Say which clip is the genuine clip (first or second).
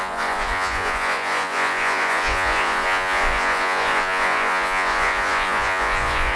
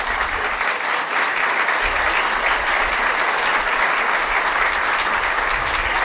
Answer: second